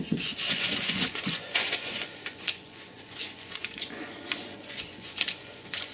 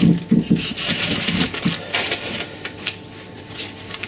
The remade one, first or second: first